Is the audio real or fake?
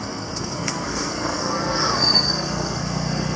fake